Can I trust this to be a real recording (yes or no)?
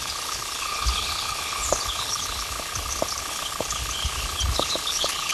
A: no